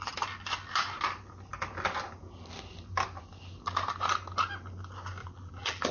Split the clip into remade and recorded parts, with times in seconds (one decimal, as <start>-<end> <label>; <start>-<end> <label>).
0.0-5.2 recorded; 5.2-5.9 remade